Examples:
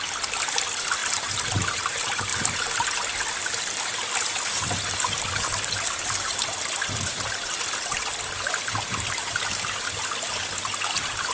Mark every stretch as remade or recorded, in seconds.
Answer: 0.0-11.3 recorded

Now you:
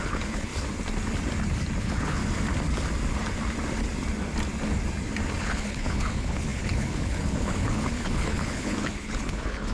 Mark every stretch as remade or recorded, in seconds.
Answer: 0.0-0.5 remade; 0.5-1.8 recorded; 1.8-2.2 remade; 2.2-5.4 recorded; 5.4-9.7 remade